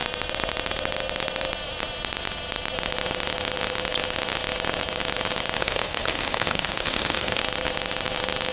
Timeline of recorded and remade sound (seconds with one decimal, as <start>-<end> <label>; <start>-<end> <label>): 0.0-5.6 recorded; 5.6-7.4 remade; 7.4-8.5 recorded